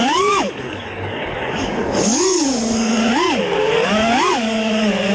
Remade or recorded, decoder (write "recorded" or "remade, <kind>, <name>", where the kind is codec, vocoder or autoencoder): remade, codec, DAC